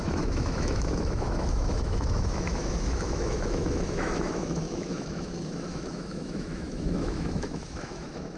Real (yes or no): no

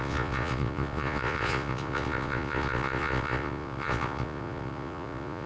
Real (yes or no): no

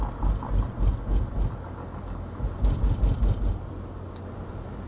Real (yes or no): yes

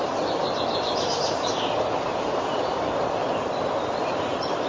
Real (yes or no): yes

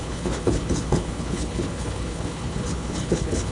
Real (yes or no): no